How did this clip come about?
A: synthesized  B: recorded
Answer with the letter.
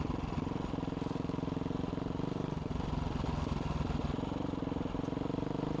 B